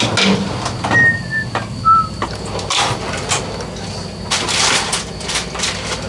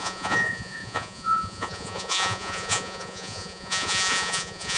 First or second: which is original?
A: first